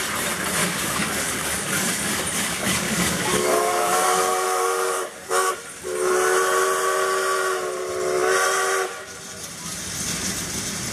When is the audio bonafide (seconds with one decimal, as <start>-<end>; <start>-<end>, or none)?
0.0-0.6; 5.5-10.9